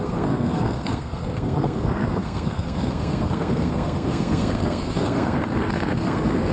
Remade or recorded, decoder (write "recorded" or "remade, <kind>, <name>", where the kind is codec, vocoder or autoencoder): remade, codec, SNAC